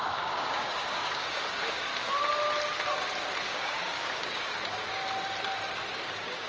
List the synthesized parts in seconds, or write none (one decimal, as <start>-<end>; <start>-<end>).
0.0-1.9; 3.4-5.0; 5.9-6.5